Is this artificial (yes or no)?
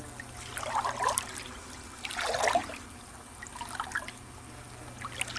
no